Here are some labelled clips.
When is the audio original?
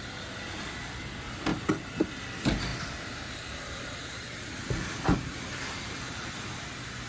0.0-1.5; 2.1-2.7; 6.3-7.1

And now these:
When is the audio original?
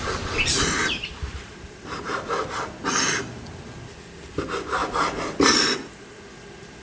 0.0-0.8; 2.7-6.8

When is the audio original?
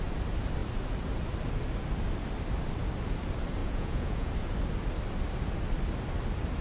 0.0-3.6; 4.3-6.6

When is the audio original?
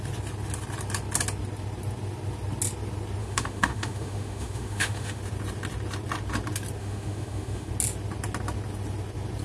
0.0-3.2; 5.2-6.8; 7.7-9.4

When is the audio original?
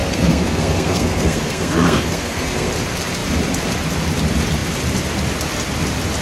2.7-6.2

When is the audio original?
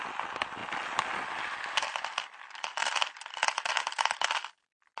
0.0-5.0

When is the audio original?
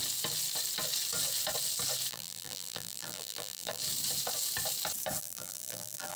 0.0-2.1; 3.8-5.2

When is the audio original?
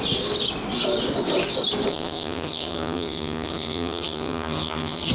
0.0-1.9